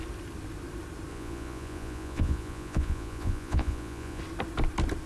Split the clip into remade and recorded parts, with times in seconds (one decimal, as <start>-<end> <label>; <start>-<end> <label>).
0.0-1.1 recorded; 1.1-4.2 remade; 4.2-5.1 recorded

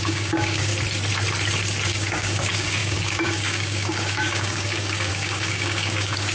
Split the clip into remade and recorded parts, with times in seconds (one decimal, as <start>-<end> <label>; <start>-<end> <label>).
0.0-0.7 remade; 0.7-1.9 recorded; 1.9-6.3 remade